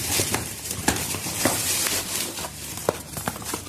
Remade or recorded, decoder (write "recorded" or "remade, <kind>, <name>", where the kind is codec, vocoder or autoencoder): remade, vocoder, BigVGAN v2